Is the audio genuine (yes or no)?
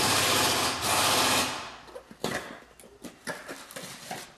yes